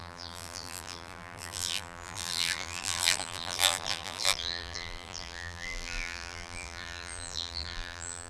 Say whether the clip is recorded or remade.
remade